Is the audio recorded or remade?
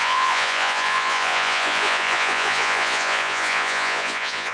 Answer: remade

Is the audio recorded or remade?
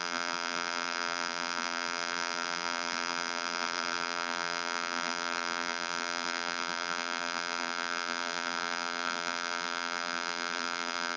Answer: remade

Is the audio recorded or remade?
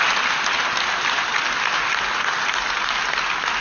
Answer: recorded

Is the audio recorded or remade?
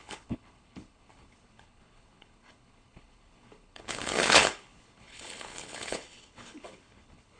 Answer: remade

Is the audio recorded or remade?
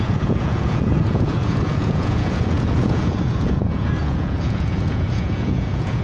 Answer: remade